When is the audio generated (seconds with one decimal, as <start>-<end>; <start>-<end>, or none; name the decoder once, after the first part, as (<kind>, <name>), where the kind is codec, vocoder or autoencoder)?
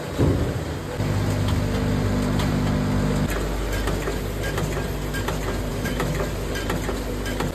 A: 5.7-6.3 (autoencoder, DAC-VAE)